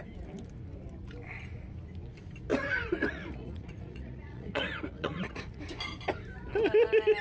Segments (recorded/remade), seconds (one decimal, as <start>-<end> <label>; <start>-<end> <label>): 0.0-2.5 recorded; 2.5-5.6 remade; 5.6-7.2 recorded